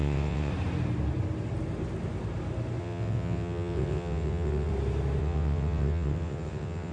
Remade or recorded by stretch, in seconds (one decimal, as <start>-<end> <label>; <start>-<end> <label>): 0.0-0.5 remade; 0.5-2.8 recorded; 2.8-4.7 remade; 4.7-5.2 recorded; 5.2-6.9 remade